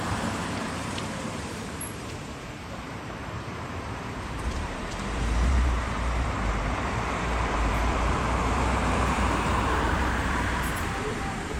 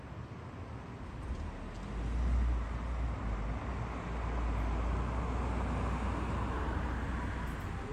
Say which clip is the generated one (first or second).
first